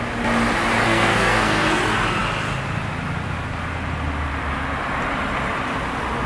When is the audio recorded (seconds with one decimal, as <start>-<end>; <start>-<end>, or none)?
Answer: 0.0-0.8; 1.8-6.3